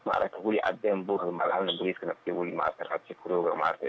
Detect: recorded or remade recorded